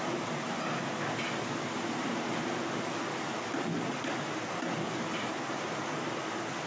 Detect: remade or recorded recorded